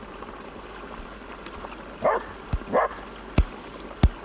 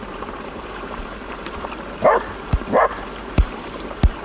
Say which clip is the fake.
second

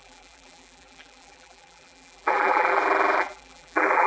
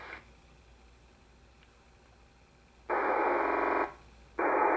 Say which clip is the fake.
first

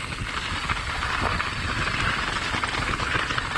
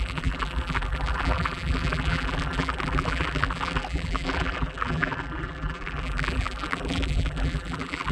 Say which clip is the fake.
second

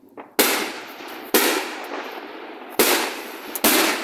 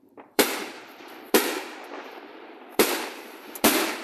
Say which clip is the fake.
second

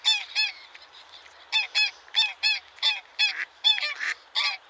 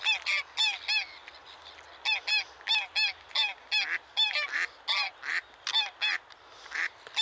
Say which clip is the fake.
first